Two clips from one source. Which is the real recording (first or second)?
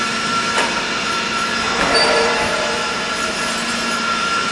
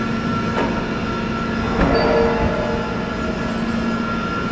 second